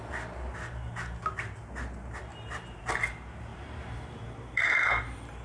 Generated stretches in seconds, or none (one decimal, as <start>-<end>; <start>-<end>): 2.3-2.9; 3.5-5.0